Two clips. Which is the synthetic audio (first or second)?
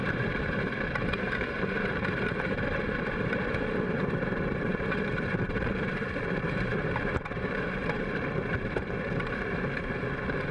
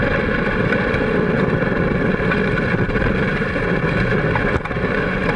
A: first